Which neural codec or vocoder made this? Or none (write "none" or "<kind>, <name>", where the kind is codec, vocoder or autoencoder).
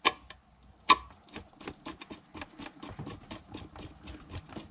none